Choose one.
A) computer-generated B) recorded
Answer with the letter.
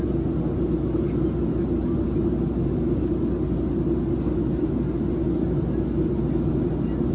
B